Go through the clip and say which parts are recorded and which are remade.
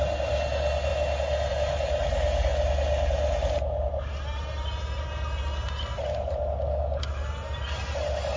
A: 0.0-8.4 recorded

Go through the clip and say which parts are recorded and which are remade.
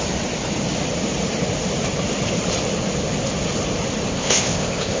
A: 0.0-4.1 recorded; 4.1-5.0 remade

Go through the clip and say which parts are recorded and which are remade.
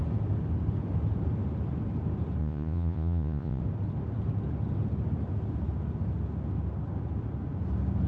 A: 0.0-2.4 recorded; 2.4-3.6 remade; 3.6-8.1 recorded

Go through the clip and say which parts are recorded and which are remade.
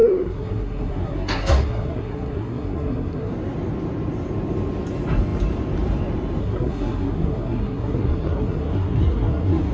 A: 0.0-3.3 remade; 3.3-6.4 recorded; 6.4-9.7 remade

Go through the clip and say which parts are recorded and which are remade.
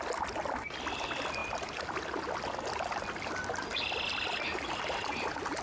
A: 0.0-5.6 recorded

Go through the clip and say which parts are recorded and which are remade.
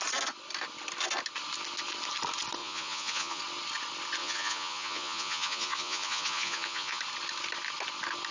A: 0.0-2.6 recorded; 2.6-3.4 remade; 3.4-4.2 recorded; 4.2-7.0 remade; 7.0-8.3 recorded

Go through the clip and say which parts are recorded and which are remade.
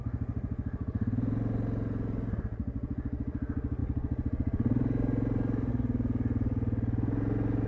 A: 0.0-7.7 recorded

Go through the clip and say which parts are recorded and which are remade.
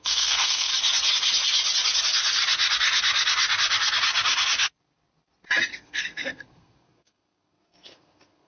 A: 0.0-0.7 remade; 0.7-5.7 recorded; 5.7-8.5 remade